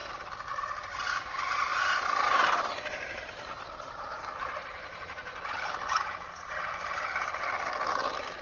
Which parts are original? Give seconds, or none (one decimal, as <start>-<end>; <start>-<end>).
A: 0.0-1.7; 5.6-8.4